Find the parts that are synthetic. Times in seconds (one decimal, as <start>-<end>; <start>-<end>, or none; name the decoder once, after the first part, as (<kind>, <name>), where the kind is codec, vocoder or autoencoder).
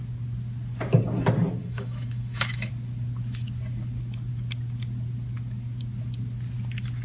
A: 1.6-2.7 (autoencoder, DAC-VAE)